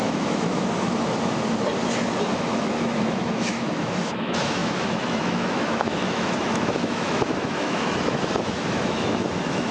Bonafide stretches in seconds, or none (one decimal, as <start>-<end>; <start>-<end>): 0.5-2.3